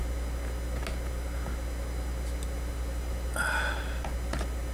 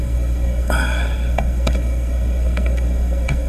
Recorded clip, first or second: first